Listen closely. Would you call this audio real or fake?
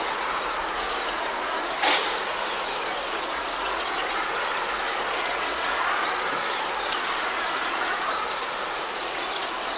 fake